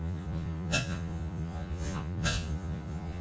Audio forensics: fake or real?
fake